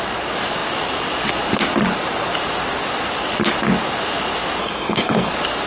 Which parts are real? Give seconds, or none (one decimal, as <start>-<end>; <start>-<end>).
0.0-4.6; 5.3-5.7